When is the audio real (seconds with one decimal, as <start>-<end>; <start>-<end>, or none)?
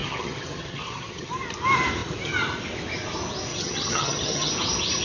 1.3-3.5; 4.5-5.0